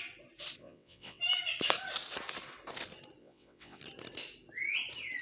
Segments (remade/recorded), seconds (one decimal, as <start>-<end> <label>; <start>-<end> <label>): 0.0-0.6 recorded; 0.6-1.2 remade; 1.2-3.2 recorded; 3.2-3.8 remade; 3.8-5.2 recorded